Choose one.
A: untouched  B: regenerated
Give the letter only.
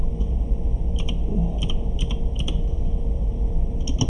A